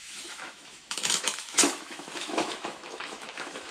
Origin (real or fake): fake